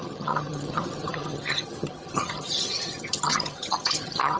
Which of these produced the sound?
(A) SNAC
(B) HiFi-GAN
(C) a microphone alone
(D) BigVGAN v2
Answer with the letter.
B